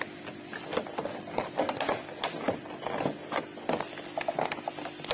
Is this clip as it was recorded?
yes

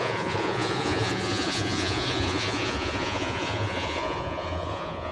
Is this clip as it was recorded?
no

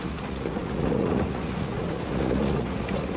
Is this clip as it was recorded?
no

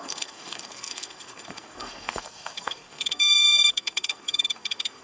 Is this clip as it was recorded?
no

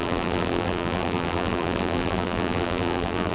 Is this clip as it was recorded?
no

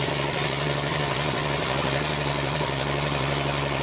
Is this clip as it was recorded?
no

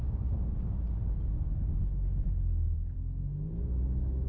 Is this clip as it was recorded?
yes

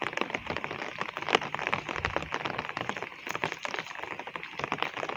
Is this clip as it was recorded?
yes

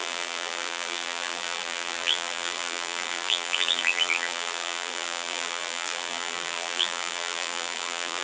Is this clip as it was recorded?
no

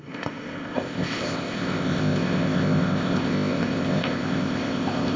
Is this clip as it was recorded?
no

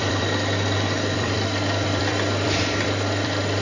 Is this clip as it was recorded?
no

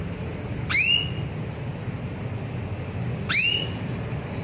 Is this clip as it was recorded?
yes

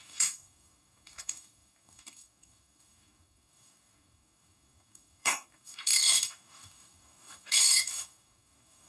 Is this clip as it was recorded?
no